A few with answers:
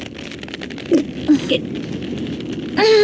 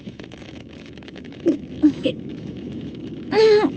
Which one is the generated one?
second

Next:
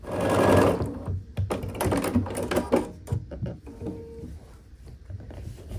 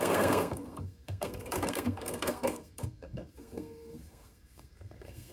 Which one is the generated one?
second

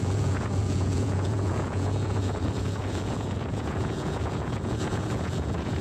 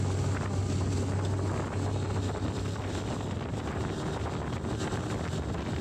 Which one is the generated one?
first